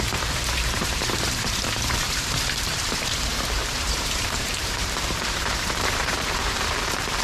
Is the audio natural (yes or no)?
no